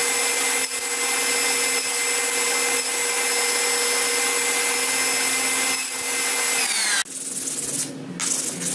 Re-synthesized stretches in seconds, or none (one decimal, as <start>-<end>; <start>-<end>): none